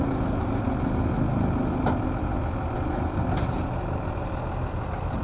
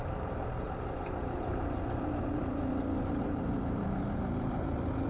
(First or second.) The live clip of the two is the first